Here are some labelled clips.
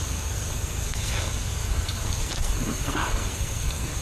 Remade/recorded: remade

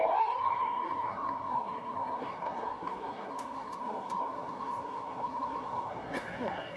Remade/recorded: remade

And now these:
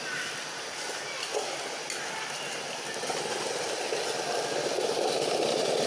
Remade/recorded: recorded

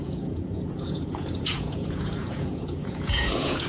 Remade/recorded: remade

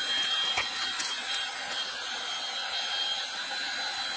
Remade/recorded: recorded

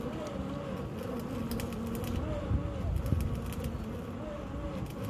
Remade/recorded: recorded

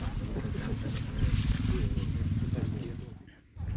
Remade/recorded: recorded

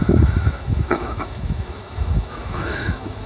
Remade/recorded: remade